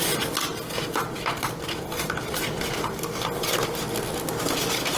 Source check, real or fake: real